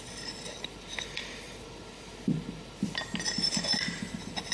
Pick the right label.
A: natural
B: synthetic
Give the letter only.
A